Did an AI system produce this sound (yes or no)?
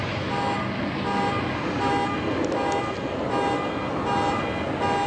no